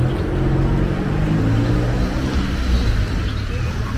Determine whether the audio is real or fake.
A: real